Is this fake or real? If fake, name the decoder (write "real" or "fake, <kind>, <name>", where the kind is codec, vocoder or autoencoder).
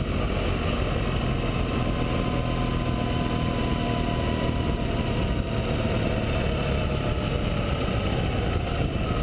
real